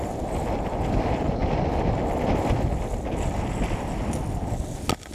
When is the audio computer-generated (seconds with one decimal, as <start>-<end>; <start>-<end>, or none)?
none

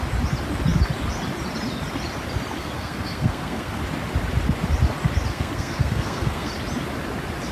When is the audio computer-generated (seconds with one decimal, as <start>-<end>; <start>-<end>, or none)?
2.6-3.8; 5.3-6.5

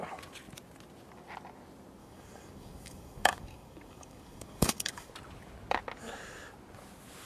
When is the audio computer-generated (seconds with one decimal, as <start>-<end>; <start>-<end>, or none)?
2.0-5.1

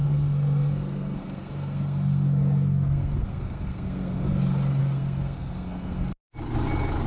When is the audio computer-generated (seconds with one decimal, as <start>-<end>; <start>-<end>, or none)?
0.0-4.3; 4.8-6.1

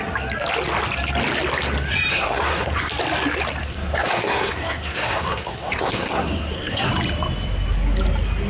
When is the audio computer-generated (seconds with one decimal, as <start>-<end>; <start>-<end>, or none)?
2.1-2.9; 3.6-6.9

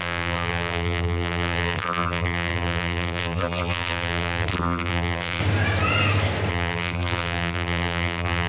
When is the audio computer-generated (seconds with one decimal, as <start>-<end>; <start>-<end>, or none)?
0.0-5.4; 6.5-8.5

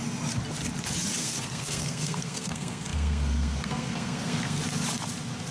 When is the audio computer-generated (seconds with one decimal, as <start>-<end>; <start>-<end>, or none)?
1.2-4.6